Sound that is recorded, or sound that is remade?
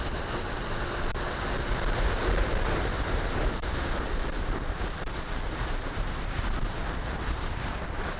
remade